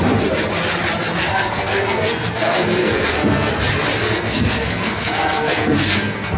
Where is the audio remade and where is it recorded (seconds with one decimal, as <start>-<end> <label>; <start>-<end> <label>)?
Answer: 0.0-1.3 recorded; 1.3-3.5 remade; 3.5-4.0 recorded; 4.0-6.4 remade